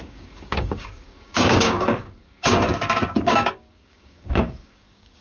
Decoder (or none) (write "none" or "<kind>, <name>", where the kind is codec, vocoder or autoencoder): codec, DAC